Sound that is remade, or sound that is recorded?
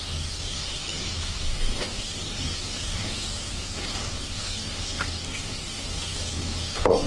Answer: remade